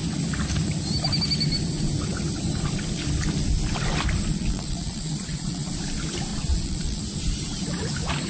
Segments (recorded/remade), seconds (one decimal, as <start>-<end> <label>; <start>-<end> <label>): 0.0-4.3 recorded; 4.3-5.7 remade; 5.7-6.3 recorded; 6.3-7.0 remade; 7.0-8.3 recorded